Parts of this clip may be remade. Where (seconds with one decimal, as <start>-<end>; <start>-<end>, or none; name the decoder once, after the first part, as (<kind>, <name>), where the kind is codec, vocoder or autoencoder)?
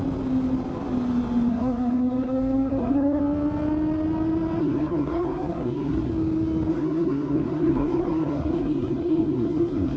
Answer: 1.5-3.2 (codec, SNAC); 4.6-6.1; 6.7-10.0